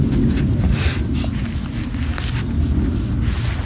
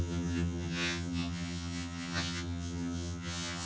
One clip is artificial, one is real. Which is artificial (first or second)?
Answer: second